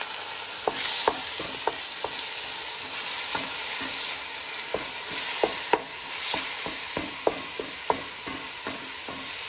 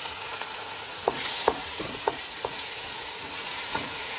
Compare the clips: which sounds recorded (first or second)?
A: first